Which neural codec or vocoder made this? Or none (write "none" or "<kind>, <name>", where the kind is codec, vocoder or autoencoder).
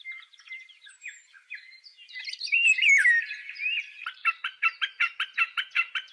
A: vocoder, BigVGAN v2